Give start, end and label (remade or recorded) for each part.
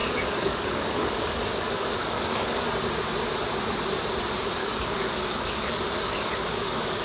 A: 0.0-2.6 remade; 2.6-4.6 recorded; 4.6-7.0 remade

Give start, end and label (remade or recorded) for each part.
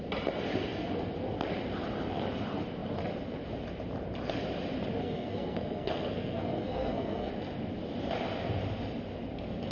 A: 0.0-5.0 recorded; 5.0-7.3 remade; 7.3-9.7 recorded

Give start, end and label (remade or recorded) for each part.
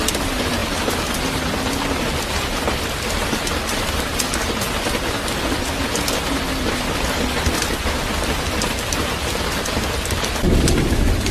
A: 0.0-11.3 recorded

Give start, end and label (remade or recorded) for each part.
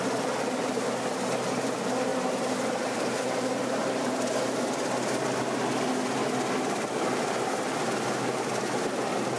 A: 0.0-9.4 recorded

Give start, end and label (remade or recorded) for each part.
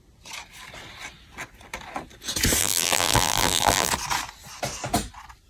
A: 0.0-2.6 recorded; 2.6-3.9 remade; 3.9-5.5 recorded